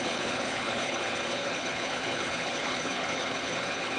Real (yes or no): no